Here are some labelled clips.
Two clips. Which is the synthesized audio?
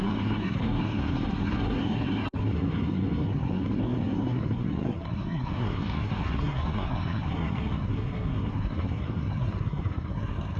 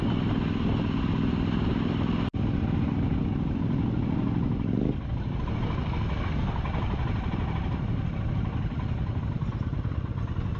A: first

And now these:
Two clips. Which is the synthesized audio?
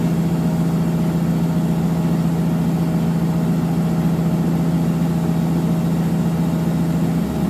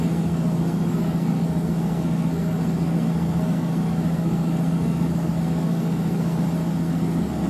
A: second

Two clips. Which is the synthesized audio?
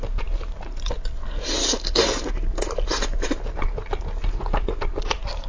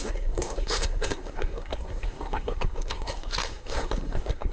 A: second